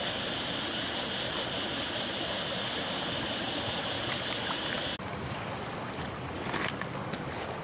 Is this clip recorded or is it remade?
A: recorded